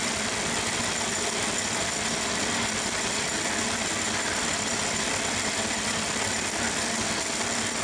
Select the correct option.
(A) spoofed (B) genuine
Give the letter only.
B